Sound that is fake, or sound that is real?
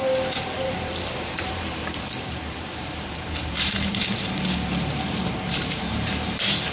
fake